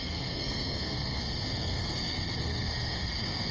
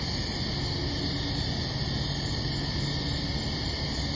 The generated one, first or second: first